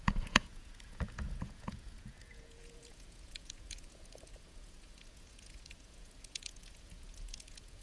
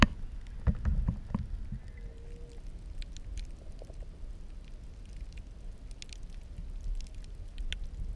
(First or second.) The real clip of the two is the second